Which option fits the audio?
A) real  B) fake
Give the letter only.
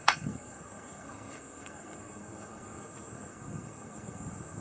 B